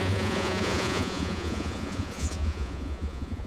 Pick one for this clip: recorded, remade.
remade